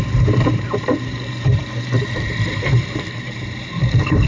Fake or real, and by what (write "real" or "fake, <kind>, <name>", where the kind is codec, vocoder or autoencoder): fake, vocoder, BigVGAN v2